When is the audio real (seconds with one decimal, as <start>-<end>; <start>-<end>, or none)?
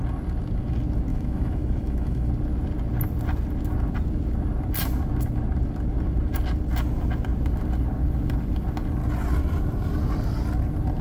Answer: 0.0-1.1; 2.3-11.0